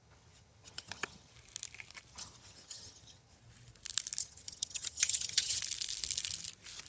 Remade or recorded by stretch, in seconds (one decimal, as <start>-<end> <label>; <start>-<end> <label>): 0.0-1.3 remade; 1.3-2.1 recorded; 2.1-3.4 remade; 3.4-4.2 recorded; 4.2-5.6 remade; 5.6-6.9 recorded